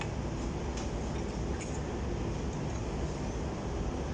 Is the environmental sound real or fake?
real